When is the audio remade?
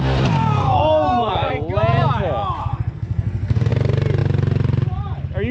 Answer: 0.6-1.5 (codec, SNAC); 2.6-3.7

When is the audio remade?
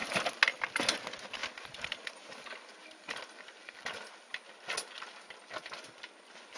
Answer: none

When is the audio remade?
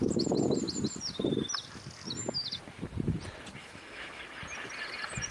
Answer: 3.6-4.2 (autoencoder, DAC-VAE)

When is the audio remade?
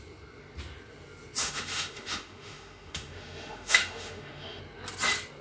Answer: 1.4-4.6 (autoencoder, DAC-VAE)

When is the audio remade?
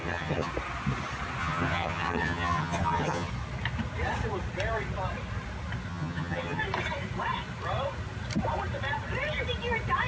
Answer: 0.0-0.5 (vocoder, HiFi-GAN); 1.4-3.3; 5.9-6.6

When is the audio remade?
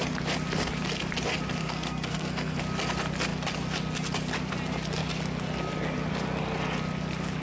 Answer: 1.6-2.6 (codec, SNAC)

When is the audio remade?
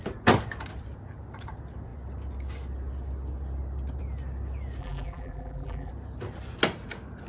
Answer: 4.8-5.9 (vocoder, BigVGAN v2)